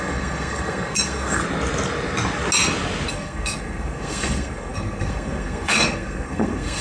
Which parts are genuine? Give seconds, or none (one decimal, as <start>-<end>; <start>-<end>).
1.4-3.1